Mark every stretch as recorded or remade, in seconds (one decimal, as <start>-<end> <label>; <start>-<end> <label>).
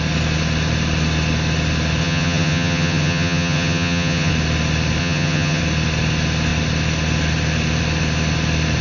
0.0-2.0 recorded; 2.0-4.3 remade; 4.3-5.0 recorded; 5.0-5.6 remade; 5.6-8.8 recorded